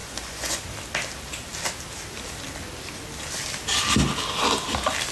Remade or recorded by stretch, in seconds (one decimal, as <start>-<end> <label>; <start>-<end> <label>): 0.0-0.6 remade; 0.6-5.1 recorded